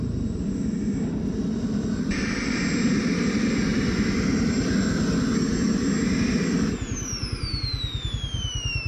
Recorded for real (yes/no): yes